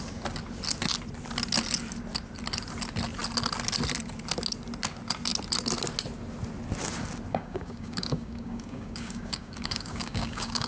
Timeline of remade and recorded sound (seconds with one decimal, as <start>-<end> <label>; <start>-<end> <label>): 0.0-7.3 recorded; 7.3-10.7 remade